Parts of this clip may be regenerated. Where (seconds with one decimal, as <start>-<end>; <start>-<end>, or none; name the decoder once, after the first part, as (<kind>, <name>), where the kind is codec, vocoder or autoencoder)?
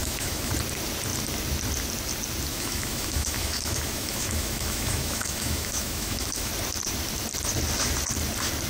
0.0-0.5 (autoencoder, DAC-VAE); 2.5-6.5